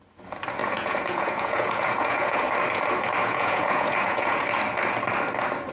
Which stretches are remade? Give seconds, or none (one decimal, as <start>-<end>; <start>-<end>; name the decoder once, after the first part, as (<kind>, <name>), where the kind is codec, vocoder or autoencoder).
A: 0.6-2.4 (vocoder, Vocos); 3.2-4.4